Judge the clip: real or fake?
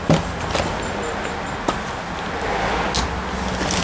real